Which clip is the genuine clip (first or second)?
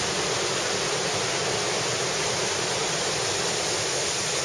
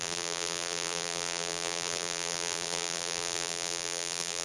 first